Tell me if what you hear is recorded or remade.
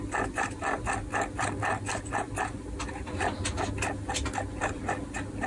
recorded